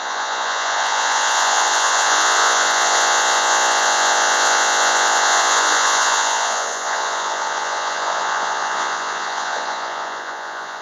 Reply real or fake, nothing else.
fake